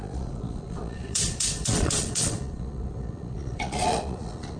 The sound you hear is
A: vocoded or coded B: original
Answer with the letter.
A